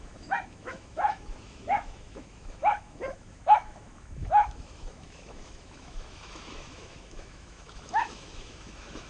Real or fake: fake